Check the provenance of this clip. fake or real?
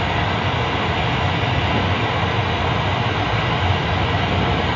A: real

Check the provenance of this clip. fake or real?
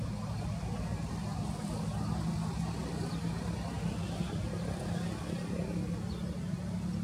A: real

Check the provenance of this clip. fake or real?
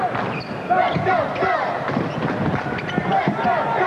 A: real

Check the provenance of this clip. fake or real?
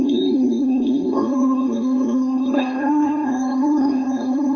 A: fake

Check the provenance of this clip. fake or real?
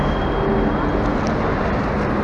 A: real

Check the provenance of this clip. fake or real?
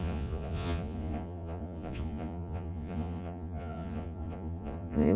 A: fake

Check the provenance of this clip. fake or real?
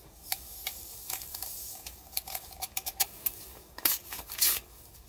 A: fake